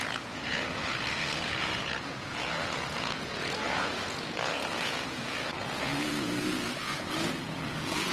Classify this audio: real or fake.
fake